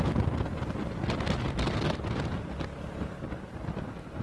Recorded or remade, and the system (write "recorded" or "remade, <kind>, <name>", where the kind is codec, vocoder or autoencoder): recorded